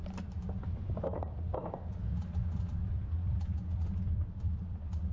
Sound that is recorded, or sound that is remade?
recorded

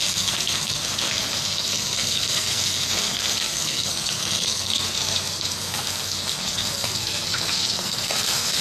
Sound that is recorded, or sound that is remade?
remade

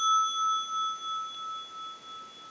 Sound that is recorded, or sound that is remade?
recorded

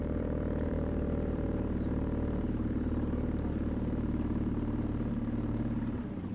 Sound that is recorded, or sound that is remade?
remade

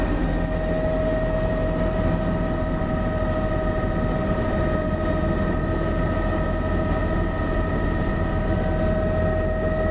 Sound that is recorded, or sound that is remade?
recorded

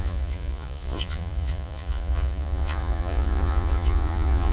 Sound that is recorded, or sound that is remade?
remade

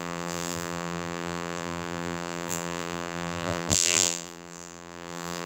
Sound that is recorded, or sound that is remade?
remade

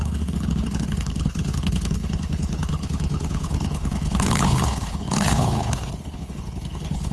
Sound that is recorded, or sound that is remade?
remade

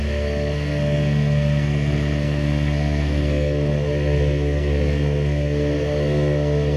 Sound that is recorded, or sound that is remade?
remade